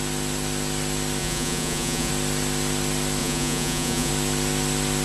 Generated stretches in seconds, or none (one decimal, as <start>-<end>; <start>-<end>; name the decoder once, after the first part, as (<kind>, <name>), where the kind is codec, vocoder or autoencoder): 1.2-2.1 (vocoder, Vocos); 3.2-4.1